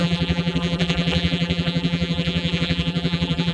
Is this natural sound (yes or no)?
no